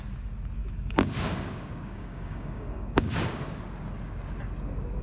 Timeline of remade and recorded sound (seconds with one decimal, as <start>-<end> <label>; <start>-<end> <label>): 0.0-0.6 recorded; 0.6-3.6 remade; 3.6-5.0 recorded